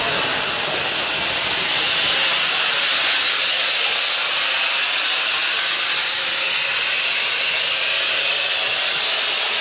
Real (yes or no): yes